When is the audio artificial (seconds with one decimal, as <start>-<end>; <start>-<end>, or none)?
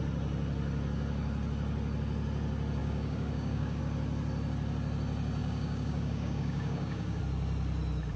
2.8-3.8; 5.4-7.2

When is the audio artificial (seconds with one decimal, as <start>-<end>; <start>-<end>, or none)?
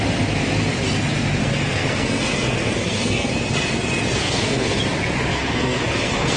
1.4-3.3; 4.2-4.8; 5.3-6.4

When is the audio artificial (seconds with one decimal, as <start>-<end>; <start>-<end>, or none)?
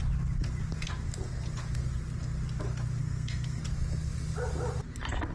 3.0-3.6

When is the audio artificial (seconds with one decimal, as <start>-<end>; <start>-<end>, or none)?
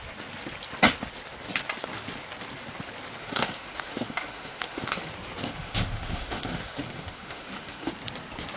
3.2-5.1; 5.5-7.9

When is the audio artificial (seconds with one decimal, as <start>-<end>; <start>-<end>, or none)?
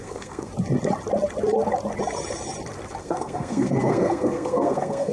0.0-0.5; 3.0-5.1